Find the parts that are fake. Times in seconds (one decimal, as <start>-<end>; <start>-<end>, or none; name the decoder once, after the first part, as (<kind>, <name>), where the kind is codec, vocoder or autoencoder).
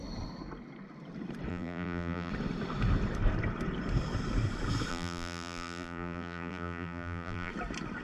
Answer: 1.5-2.3 (vocoder, BigVGAN v2); 4.9-7.5